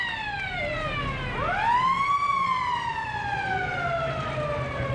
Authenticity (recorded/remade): recorded